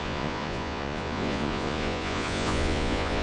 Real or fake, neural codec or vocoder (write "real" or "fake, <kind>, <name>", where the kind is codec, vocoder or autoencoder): fake, vocoder, Vocos